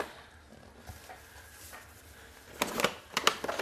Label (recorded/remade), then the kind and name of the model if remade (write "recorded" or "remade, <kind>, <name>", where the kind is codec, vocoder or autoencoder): recorded